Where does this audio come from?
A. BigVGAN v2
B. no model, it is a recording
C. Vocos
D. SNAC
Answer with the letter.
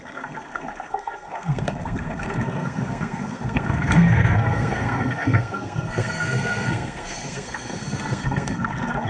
D